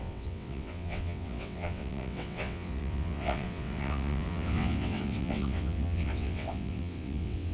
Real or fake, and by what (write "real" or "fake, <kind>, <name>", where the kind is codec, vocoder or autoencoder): fake, vocoder, WaveNeXt